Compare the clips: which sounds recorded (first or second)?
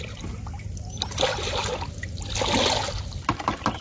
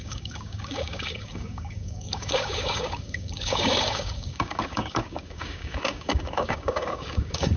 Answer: first